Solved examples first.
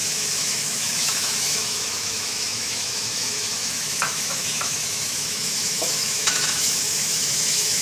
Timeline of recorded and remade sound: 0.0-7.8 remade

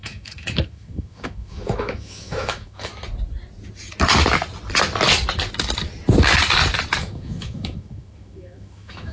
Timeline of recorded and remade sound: 0.0-2.9 remade; 2.9-7.0 recorded; 7.0-9.1 remade

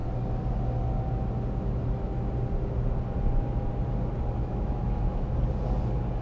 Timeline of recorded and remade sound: 0.0-4.4 recorded; 4.4-5.3 remade; 5.3-6.2 recorded

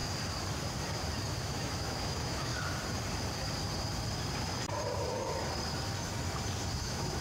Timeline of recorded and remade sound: 0.0-1.4 recorded; 1.4-2.5 remade; 2.5-6.8 recorded; 6.8-7.2 remade

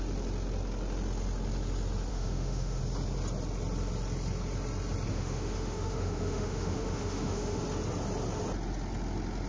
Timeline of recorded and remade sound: 0.0-2.1 recorded; 2.1-2.8 remade; 2.8-5.1 recorded; 5.1-7.6 remade; 7.6-9.5 recorded

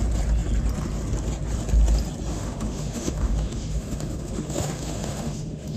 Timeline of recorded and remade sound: 0.0-2.3 recorded; 2.3-5.8 remade